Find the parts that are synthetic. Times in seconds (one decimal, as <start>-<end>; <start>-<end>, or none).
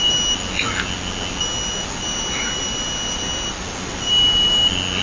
none